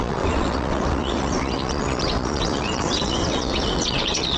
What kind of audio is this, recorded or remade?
remade